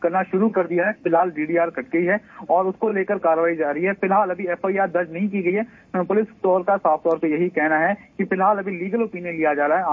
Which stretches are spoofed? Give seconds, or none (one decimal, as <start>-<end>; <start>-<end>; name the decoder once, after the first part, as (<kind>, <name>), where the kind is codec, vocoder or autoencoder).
0.5-1.2 (codec, SNAC)